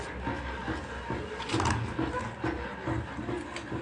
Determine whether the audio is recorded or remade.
recorded